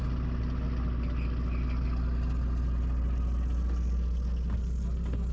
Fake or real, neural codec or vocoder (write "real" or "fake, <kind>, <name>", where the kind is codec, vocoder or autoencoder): real